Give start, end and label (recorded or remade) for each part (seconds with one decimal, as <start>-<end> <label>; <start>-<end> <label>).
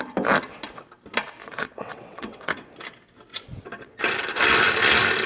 0.0-1.4 recorded; 1.4-2.7 remade; 2.7-3.3 recorded; 3.3-4.0 remade; 4.0-5.3 recorded